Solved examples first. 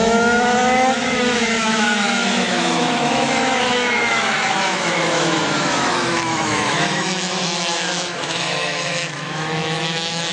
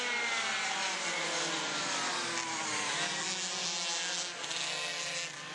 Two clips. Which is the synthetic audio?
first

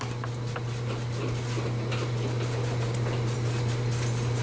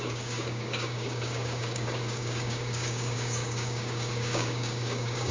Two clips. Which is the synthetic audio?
second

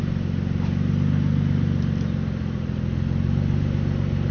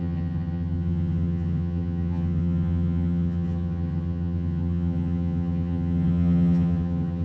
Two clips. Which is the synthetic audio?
second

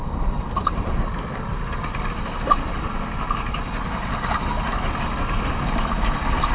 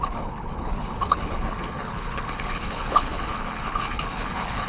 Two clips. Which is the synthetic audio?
second